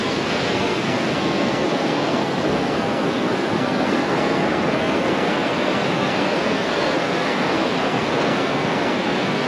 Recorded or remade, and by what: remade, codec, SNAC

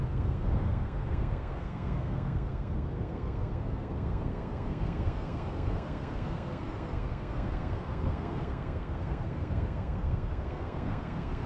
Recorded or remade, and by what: remade, codec, SNAC